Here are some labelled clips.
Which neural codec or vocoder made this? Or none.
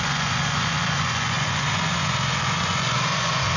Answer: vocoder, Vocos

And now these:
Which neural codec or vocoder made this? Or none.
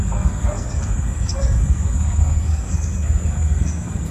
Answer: codec, SNAC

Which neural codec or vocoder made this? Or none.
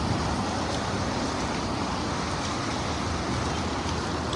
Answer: none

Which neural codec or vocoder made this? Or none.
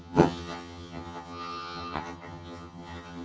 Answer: vocoder, HiFi-GAN